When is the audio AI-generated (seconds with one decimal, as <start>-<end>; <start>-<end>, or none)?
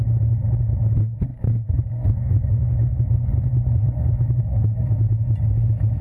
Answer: 1.3-4.4